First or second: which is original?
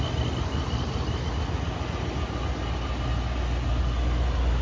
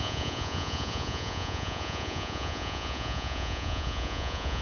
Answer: first